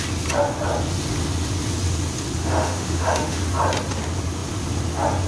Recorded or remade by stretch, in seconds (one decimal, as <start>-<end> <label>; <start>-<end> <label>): 0.0-2.4 recorded; 2.4-3.4 remade; 3.4-5.3 recorded